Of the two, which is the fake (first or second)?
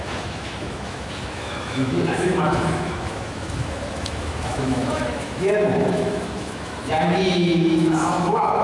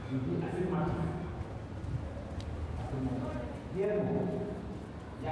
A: first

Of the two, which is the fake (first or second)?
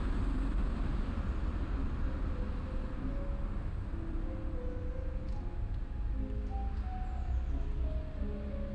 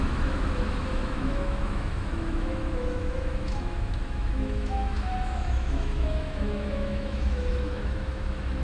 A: second